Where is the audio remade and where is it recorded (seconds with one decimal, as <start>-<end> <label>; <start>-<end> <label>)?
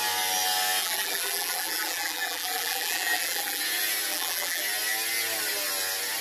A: 0.0-0.8 recorded; 0.8-3.6 remade; 3.6-4.1 recorded; 4.1-4.6 remade; 4.6-6.2 recorded